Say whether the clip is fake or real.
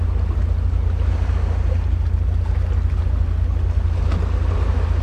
real